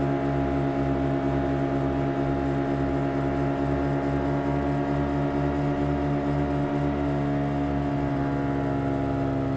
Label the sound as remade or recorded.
recorded